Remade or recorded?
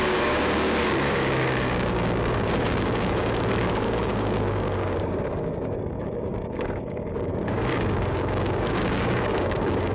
remade